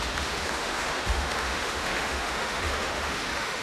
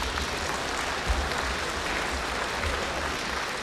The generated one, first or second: first